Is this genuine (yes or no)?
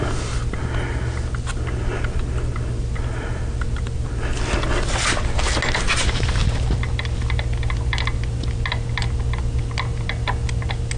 yes